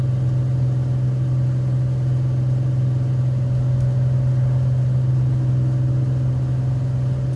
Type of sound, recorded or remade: recorded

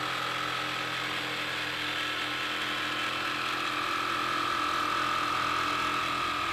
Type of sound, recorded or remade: recorded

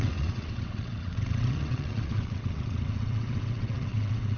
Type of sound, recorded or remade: remade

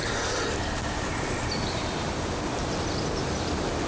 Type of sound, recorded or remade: recorded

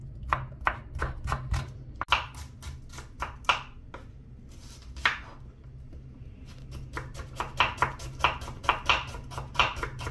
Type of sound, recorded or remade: recorded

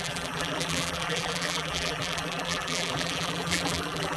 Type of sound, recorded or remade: remade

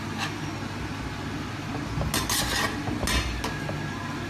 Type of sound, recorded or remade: recorded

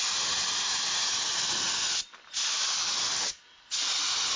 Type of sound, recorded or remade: recorded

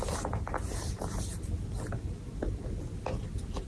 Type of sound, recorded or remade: recorded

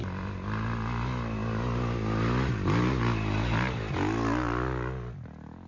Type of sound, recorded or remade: recorded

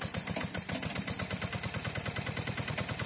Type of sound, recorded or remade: recorded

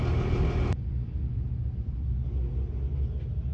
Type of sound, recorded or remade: recorded